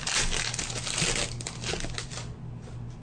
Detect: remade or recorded recorded